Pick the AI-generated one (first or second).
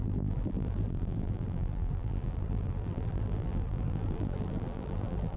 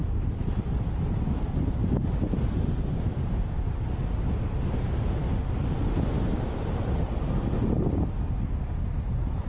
first